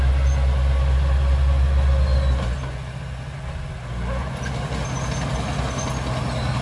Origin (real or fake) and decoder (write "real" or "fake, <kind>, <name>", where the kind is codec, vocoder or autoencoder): real